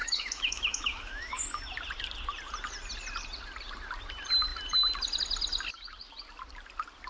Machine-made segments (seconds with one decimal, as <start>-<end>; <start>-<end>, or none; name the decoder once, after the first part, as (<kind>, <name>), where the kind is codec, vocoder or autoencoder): 0.0-1.4 (autoencoder, DAC-VAE)